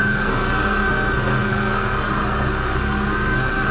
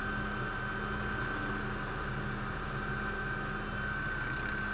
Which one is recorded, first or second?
second